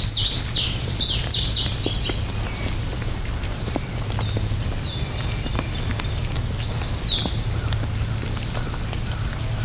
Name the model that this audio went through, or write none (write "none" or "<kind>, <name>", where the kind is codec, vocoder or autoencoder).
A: none